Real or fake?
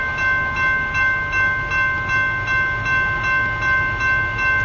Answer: real